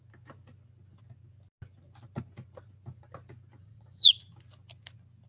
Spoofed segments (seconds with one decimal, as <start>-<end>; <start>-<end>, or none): 3.6-4.2